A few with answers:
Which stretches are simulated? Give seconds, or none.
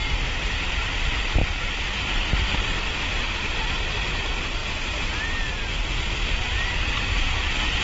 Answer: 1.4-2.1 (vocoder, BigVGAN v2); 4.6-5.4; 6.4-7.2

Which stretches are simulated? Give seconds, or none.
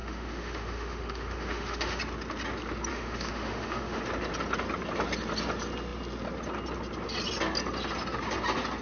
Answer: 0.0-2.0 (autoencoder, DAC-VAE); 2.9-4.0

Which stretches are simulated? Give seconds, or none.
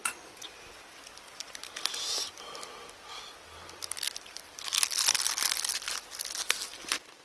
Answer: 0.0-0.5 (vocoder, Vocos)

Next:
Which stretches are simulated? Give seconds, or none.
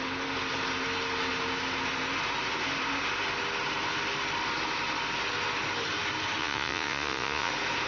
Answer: 6.4-7.5 (vocoder, Vocos)